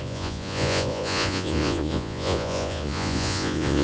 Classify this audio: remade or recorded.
remade